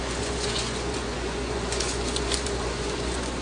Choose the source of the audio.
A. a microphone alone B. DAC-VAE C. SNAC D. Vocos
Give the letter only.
D